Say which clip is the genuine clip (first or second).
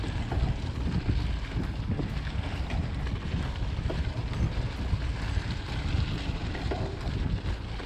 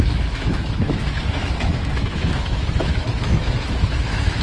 first